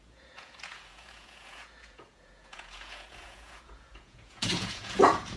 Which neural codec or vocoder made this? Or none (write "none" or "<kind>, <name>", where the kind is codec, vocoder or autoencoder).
vocoder, Vocos